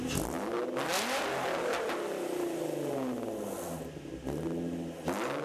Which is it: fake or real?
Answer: real